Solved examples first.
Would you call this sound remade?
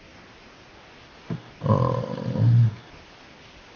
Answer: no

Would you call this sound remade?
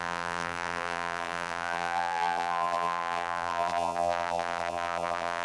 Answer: yes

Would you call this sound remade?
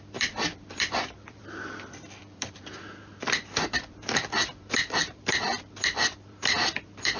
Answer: yes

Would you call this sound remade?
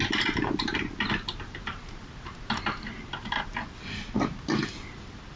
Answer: no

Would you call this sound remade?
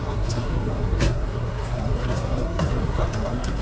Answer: yes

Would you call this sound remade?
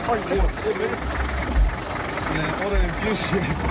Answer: no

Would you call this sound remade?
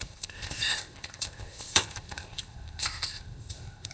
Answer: yes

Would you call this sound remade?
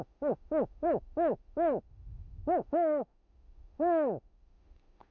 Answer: yes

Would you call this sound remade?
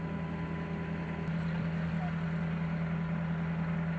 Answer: no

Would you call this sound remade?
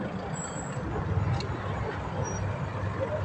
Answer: no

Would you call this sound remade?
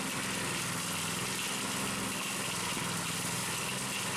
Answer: no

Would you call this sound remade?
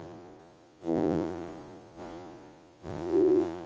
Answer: yes